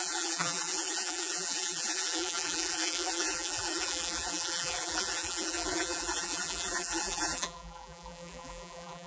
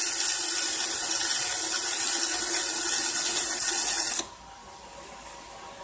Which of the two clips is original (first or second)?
second